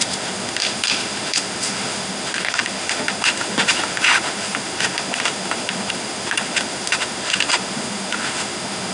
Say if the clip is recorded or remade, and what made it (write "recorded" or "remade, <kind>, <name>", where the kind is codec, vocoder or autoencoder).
remade, autoencoder, DAC-VAE